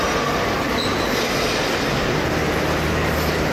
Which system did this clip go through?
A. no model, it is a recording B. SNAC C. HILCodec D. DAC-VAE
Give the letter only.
A